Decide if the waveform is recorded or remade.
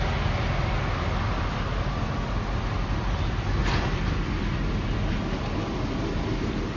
recorded